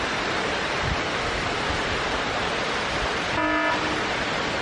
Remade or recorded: recorded